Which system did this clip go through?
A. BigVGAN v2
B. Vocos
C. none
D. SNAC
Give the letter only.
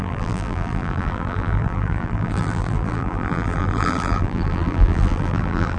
A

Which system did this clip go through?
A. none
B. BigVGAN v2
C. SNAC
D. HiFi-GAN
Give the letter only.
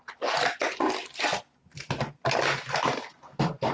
A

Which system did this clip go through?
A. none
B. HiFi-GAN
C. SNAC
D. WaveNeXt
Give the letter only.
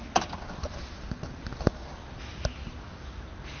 A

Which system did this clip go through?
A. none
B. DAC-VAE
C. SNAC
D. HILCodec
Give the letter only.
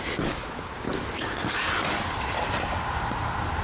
A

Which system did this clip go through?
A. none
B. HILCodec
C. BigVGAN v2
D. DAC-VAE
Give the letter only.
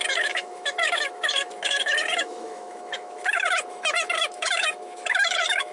D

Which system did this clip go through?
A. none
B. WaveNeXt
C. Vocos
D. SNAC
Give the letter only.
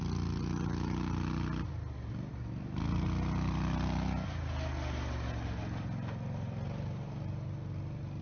A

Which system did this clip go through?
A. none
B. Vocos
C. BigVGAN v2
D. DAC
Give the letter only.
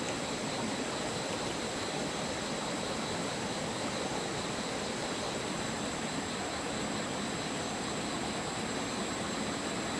C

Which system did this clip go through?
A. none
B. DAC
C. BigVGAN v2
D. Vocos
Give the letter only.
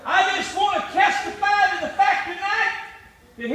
A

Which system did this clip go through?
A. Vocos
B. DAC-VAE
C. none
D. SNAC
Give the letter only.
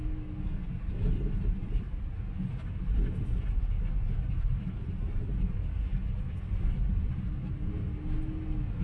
C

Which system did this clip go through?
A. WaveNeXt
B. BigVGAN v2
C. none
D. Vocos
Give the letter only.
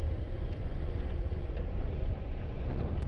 D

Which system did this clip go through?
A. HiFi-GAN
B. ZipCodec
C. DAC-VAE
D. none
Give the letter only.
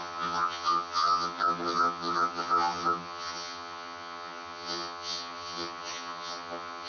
A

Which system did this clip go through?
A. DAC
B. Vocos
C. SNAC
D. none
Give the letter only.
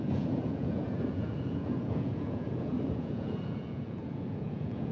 B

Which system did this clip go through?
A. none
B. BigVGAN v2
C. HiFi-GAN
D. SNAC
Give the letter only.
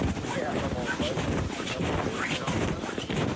A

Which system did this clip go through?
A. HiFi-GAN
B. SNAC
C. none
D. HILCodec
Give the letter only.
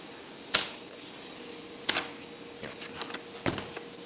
C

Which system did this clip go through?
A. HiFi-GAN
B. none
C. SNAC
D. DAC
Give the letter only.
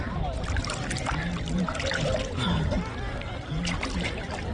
B